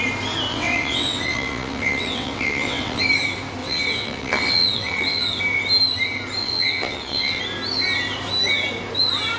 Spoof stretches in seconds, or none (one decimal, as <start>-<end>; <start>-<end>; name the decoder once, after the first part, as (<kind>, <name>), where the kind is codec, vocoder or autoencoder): 0.5-3.0 (vocoder, WaveNeXt); 3.6-5.4; 6.4-7.4